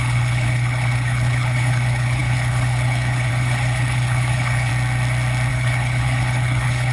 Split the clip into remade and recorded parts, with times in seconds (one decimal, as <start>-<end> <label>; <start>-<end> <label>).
0.0-4.7 remade; 4.7-5.5 recorded; 5.5-6.9 remade

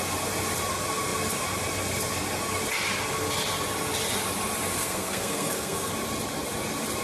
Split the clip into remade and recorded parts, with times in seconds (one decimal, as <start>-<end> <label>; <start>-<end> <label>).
0.0-4.8 recorded; 4.8-5.9 remade; 5.9-7.0 recorded

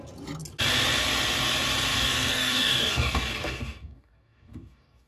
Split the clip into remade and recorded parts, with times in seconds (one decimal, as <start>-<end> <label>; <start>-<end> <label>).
0.0-1.9 recorded; 1.9-5.1 remade